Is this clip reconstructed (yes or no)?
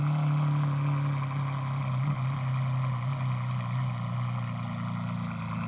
no